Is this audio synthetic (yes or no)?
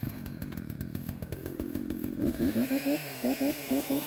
yes